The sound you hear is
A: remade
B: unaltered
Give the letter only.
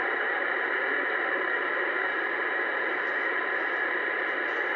A